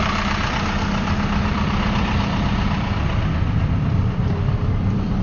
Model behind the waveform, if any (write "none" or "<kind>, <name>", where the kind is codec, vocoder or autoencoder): vocoder, BigVGAN v2